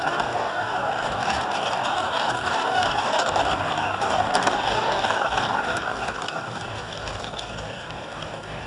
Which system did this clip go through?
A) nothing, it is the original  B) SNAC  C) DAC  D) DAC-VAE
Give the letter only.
C